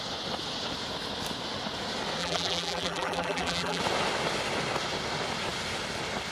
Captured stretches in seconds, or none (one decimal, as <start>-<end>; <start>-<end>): 0.0-2.2; 3.8-6.3